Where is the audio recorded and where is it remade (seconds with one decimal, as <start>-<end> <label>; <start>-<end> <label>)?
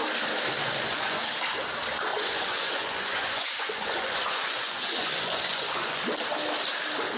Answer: 0.0-0.6 recorded; 0.6-1.2 remade; 1.2-2.1 recorded; 2.1-6.0 remade; 6.0-7.2 recorded